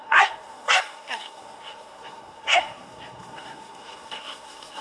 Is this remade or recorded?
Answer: remade